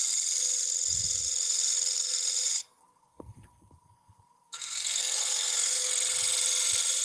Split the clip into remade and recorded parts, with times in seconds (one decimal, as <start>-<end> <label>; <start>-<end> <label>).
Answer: 0.0-2.8 recorded; 2.8-5.9 remade; 5.9-7.0 recorded

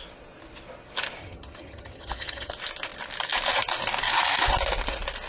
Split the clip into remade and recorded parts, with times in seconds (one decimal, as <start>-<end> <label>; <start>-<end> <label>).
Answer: 0.0-1.2 recorded; 1.2-2.5 remade; 2.5-5.3 recorded

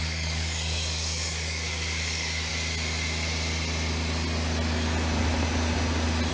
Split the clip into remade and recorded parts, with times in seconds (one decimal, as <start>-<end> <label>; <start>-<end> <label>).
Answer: 0.0-2.5 remade; 2.5-6.3 recorded

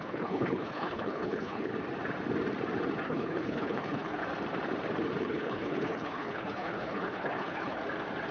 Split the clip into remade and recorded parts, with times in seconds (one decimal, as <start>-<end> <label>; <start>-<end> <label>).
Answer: 0.0-1.7 remade; 1.7-3.0 recorded; 3.0-4.2 remade; 4.2-5.2 recorded; 5.2-7.8 remade; 7.8-8.3 recorded

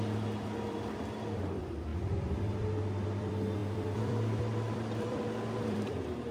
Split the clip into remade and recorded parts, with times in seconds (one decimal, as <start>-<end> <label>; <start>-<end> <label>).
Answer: 0.0-6.3 remade

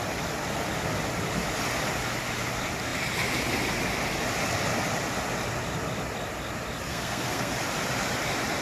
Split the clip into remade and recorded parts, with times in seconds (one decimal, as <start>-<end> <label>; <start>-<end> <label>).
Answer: 0.0-6.9 recorded; 6.9-7.5 remade; 7.5-8.6 recorded

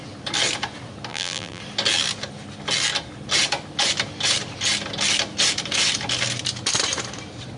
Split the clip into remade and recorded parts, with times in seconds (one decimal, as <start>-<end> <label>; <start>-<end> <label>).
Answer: 0.0-1.1 recorded; 1.1-1.6 remade; 1.6-7.6 recorded